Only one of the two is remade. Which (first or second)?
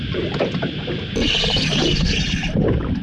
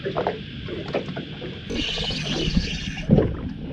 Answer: first